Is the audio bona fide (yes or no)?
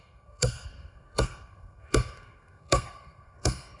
no